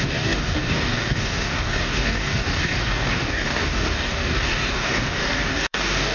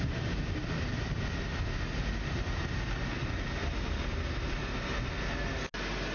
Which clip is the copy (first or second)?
first